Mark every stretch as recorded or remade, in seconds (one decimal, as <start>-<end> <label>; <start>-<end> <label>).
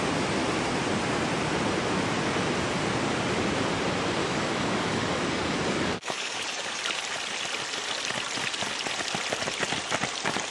0.0-4.2 recorded; 4.2-6.8 remade; 6.8-10.5 recorded